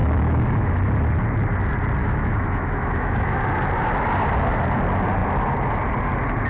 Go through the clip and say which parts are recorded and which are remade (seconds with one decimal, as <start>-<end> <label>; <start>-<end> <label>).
0.0-0.7 remade; 0.7-2.0 recorded; 2.0-3.4 remade; 3.4-6.5 recorded

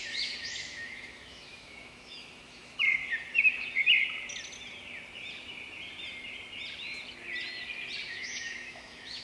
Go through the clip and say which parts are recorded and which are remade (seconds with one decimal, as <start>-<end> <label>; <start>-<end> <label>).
0.0-3.0 remade; 3.0-8.1 recorded; 8.1-9.2 remade

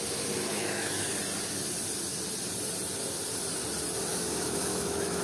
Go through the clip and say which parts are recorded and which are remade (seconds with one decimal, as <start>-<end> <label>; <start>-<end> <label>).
0.0-0.5 recorded; 0.5-1.1 remade; 1.1-4.1 recorded; 4.1-5.2 remade

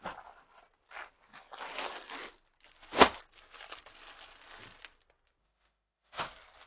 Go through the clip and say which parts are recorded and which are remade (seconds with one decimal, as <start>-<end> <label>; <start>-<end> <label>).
0.0-5.4 recorded; 5.4-6.2 remade; 6.2-6.7 recorded

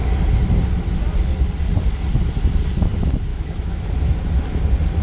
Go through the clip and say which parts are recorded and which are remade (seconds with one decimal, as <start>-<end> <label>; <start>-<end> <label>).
0.0-3.3 recorded; 3.3-3.9 remade; 3.9-5.0 recorded